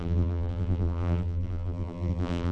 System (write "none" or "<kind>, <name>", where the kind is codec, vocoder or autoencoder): vocoder, BigVGAN v2